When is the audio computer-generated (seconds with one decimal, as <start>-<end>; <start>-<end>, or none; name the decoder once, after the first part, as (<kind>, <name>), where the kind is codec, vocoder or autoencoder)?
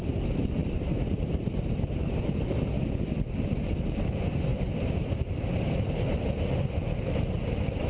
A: none